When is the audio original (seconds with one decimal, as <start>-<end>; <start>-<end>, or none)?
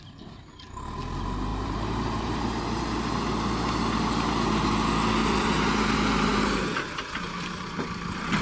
0.0-1.5; 2.8-5.2; 5.7-8.4